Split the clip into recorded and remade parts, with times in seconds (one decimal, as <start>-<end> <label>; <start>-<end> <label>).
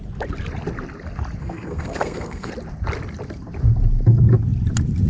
0.0-1.4 recorded; 1.4-2.5 remade; 2.5-5.1 recorded